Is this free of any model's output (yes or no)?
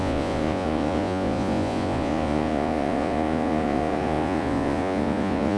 no